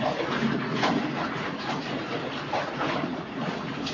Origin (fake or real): fake